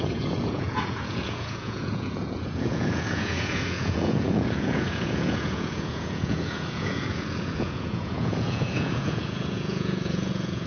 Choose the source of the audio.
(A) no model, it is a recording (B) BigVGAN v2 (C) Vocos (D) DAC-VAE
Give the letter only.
C